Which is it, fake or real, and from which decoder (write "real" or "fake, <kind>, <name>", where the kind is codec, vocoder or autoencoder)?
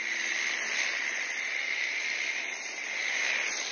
real